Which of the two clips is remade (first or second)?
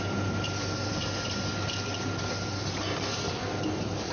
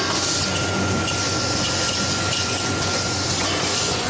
second